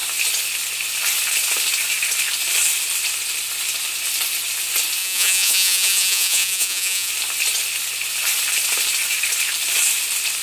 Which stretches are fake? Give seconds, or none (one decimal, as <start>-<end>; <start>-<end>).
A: 5.0-7.1